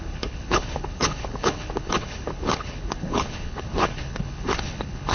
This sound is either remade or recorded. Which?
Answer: remade